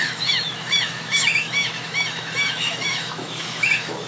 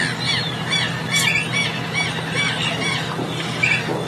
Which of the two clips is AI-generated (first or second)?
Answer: first